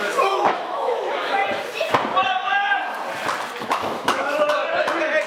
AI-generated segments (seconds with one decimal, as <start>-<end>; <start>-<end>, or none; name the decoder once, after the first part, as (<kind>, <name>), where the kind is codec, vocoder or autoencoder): 0.0-1.4 (autoencoder, DAC-VAE); 3.6-4.6